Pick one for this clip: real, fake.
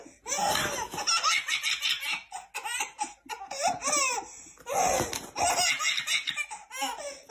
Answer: real